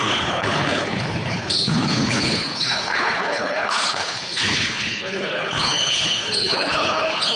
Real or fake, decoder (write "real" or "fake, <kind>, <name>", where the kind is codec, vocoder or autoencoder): fake, codec, HILCodec